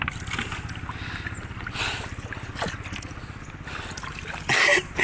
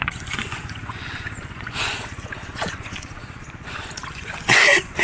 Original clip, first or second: first